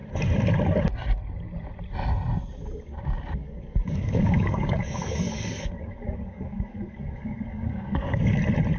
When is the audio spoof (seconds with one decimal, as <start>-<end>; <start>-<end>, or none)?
3.4-8.2